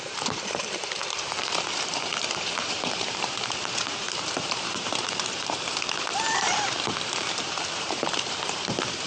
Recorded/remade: remade